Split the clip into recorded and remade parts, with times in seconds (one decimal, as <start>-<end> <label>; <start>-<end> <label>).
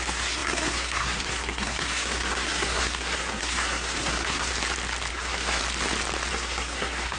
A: 0.0-4.5 remade; 4.5-5.1 recorded; 5.1-5.6 remade; 5.6-6.3 recorded; 6.3-7.2 remade